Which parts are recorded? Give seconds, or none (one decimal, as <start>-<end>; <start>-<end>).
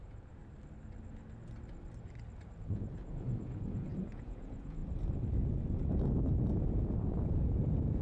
0.4-2.6; 4.8-6.8